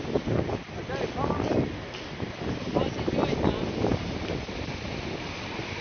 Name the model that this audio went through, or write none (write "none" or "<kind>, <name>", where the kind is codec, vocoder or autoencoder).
none